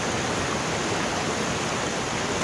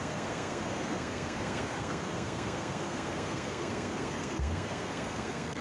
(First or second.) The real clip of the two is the first